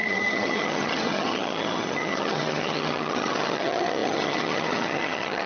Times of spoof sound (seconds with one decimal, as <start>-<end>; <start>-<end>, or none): 0.0-5.5